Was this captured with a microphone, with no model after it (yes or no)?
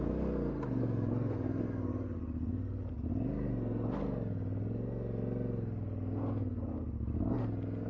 yes